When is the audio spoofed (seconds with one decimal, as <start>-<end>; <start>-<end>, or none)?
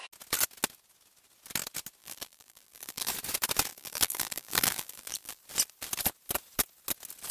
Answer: 2.0-3.1; 3.7-5.4